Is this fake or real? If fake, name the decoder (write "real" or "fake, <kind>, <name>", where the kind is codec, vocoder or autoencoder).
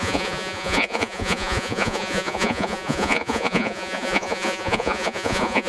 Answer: fake, vocoder, Vocos